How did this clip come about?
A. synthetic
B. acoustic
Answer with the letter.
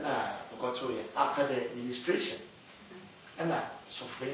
A